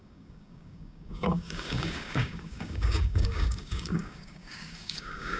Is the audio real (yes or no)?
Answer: no